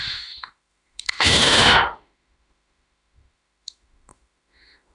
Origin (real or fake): fake